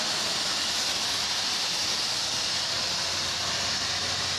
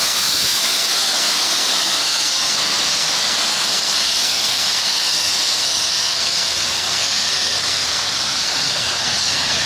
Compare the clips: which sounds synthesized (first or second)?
second